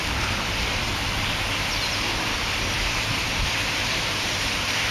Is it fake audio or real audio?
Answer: fake